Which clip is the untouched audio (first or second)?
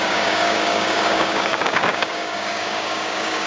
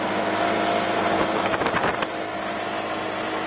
second